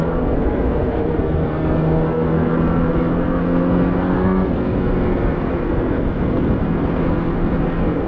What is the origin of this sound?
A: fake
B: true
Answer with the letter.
A